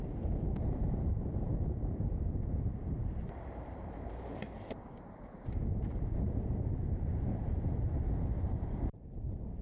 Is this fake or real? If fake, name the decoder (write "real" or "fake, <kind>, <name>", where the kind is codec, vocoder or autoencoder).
fake, vocoder, BigVGAN v2